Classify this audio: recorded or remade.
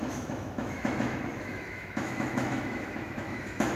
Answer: remade